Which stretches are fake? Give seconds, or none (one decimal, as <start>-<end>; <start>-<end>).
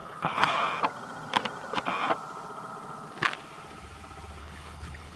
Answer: 0.0-0.6; 4.4-5.2